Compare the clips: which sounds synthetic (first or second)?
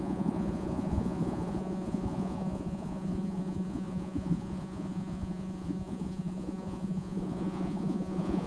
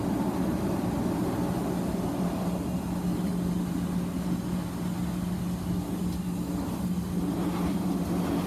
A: first